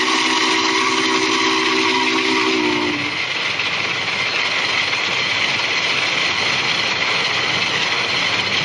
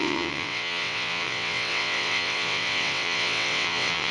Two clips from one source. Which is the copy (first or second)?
second